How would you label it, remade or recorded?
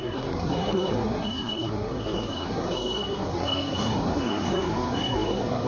remade